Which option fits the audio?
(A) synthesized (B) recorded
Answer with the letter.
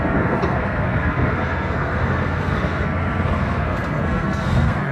A